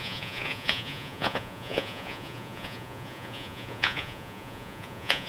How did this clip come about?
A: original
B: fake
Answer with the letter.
B